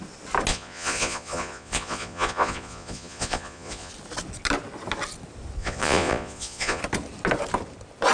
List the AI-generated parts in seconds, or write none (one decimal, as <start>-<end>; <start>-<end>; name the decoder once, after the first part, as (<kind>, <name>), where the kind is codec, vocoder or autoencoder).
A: 0.5-3.9 (vocoder, Vocos); 5.6-6.8